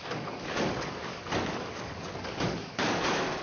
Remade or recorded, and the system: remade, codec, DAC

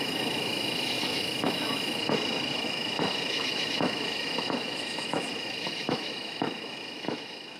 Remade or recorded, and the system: remade, autoencoder, DAC-VAE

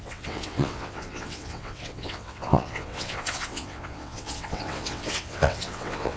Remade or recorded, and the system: remade, vocoder, WaveNeXt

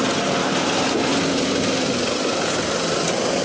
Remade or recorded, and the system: recorded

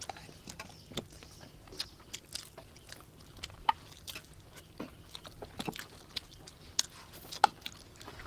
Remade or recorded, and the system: recorded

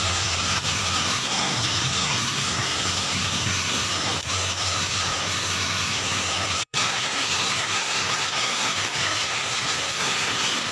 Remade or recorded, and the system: remade, codec, SNAC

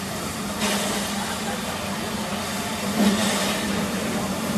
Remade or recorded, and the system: recorded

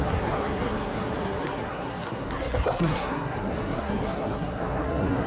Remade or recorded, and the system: remade, codec, SNAC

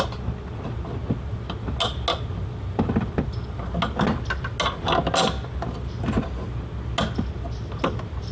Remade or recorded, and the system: recorded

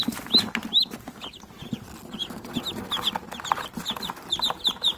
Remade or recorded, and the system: recorded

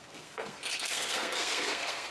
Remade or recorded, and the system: remade, codec, SNAC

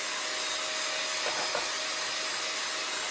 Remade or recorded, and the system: recorded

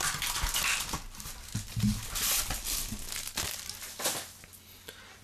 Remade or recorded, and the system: recorded